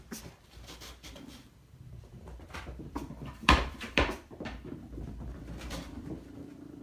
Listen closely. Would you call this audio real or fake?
fake